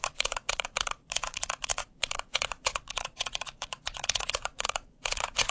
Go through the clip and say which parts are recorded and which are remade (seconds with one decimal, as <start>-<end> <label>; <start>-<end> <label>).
0.0-5.5 remade